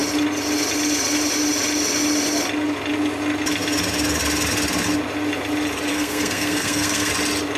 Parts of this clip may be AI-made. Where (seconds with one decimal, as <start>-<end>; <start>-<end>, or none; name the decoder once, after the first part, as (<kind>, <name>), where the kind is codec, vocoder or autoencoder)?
5.9-7.1 (codec, SNAC)